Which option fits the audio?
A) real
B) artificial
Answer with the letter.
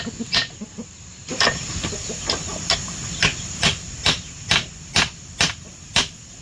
A